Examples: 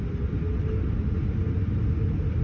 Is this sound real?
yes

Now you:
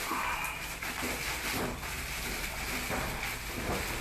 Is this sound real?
yes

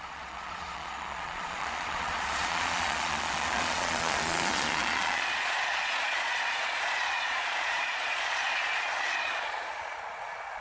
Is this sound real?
no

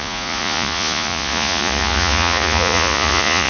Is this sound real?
no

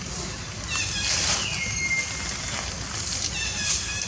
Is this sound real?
yes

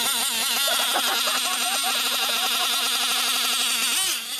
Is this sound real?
yes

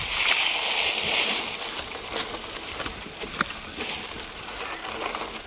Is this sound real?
yes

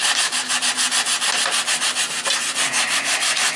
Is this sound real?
yes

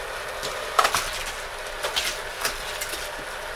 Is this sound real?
yes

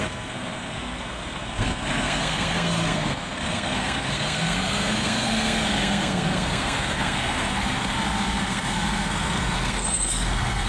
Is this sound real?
no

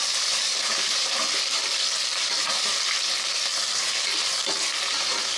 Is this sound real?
no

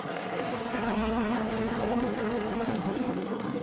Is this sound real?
no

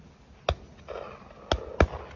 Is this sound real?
yes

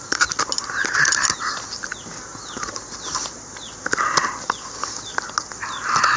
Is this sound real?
yes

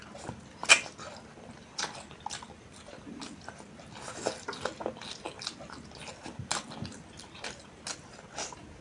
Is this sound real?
yes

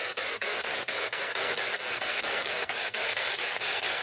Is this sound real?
no